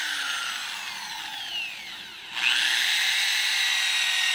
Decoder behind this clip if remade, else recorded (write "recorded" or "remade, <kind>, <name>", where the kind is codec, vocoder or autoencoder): recorded